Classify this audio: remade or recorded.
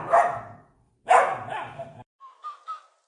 recorded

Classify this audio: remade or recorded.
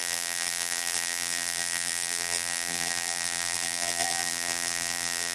remade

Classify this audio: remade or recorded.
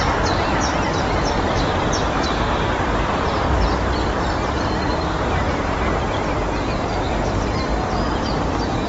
remade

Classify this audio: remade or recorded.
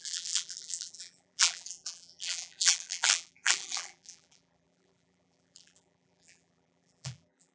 remade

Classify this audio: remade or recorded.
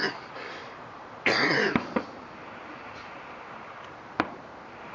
remade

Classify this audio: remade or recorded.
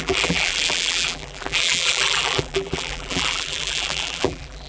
remade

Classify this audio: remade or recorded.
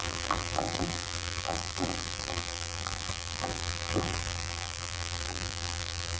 remade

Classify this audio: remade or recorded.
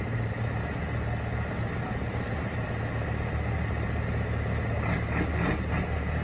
recorded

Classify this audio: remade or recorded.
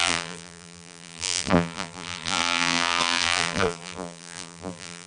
remade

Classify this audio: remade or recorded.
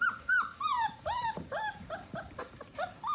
remade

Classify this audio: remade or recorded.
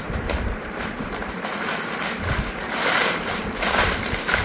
remade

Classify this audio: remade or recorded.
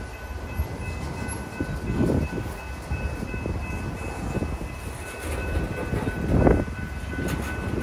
recorded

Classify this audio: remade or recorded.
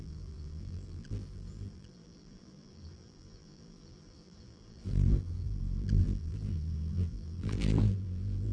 remade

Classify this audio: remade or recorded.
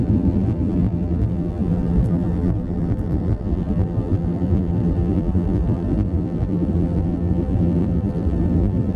remade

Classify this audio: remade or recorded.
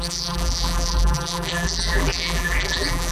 remade